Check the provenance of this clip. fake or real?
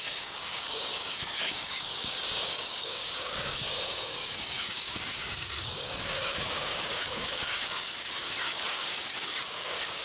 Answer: fake